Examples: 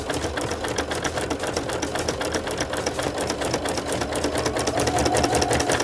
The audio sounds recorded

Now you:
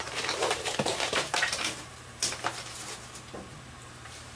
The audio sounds remade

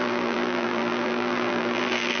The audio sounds remade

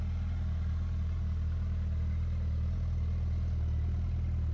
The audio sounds recorded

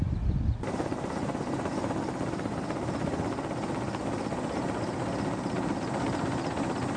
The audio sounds recorded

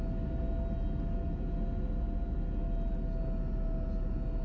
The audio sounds recorded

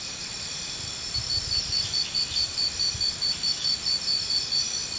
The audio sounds recorded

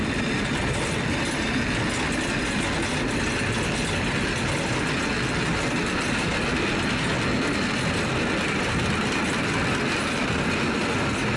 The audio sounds recorded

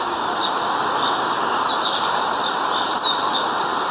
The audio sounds recorded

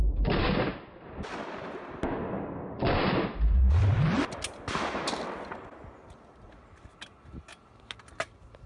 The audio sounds recorded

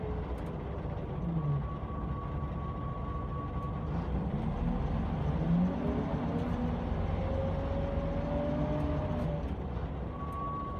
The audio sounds recorded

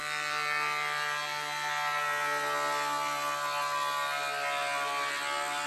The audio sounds recorded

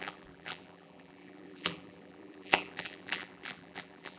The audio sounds remade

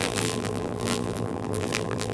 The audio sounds remade